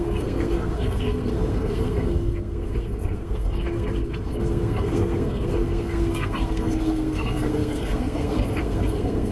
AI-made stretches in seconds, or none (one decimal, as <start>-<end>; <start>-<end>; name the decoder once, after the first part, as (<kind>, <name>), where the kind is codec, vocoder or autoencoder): 0.0-9.3 (codec, SNAC)